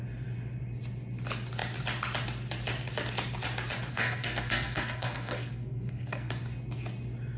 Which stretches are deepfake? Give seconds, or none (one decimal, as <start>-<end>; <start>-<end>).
3.9-6.3